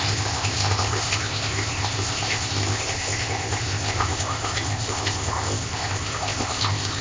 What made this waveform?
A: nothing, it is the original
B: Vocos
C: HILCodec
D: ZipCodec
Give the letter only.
D